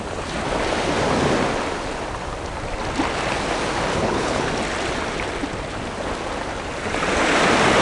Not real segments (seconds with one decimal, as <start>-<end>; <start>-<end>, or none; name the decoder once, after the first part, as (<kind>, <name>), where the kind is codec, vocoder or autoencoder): 3.9-4.5 (codec, HILCodec)